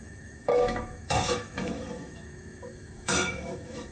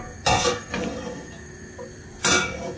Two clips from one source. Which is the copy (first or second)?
first